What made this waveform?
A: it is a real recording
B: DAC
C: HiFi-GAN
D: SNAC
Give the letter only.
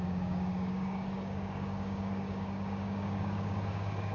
B